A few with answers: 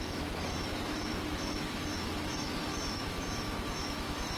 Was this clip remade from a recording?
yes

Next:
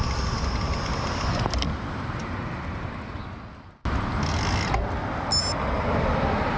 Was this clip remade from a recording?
no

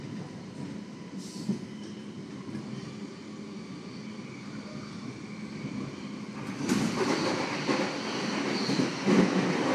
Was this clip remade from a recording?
no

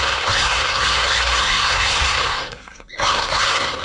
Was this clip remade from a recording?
yes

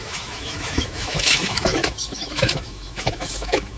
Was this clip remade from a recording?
yes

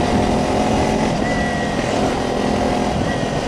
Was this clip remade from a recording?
no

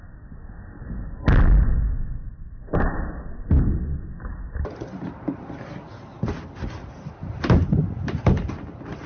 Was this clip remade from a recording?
no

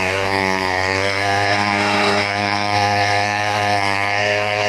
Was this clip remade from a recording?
yes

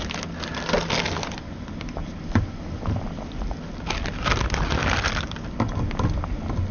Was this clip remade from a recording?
no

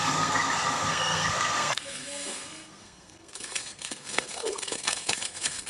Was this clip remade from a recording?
yes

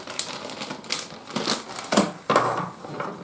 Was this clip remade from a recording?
no